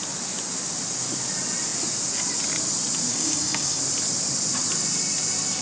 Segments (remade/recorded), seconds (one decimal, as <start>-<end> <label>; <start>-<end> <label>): 0.0-3.1 recorded; 3.1-3.8 remade; 3.8-5.6 recorded